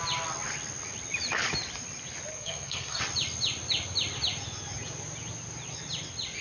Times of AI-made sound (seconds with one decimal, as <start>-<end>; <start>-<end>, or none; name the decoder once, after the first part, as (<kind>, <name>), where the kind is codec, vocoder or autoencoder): 2.3-3.0 (codec, SNAC)

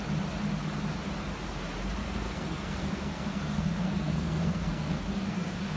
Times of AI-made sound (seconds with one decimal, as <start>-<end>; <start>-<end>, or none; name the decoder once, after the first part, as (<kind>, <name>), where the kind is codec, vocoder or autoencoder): 2.0-5.8 (codec, SNAC)